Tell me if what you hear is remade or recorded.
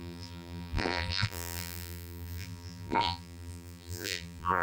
remade